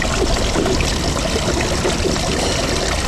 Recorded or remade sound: recorded